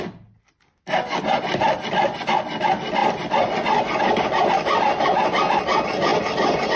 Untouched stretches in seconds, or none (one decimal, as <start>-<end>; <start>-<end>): 0.0-6.8